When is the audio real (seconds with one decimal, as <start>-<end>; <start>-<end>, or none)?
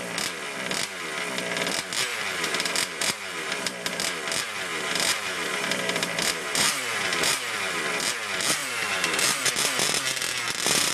0.0-2.1; 4.0-4.7; 7.8-8.6; 9.5-10.9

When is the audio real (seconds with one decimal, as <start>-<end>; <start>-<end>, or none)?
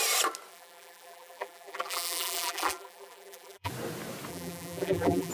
0.0-0.5; 3.7-4.3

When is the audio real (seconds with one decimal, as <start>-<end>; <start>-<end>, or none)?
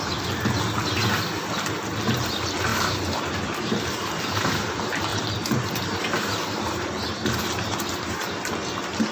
0.0-2.7; 4.6-5.1; 8.3-9.1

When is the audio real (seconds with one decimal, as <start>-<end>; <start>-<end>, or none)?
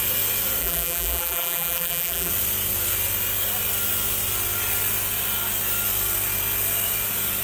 0.0-0.6; 2.3-7.4